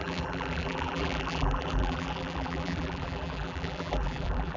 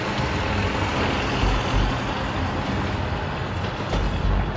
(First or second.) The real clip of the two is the second